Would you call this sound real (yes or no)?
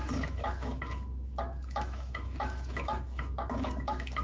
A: no